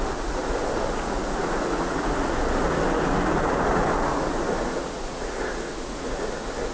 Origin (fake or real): fake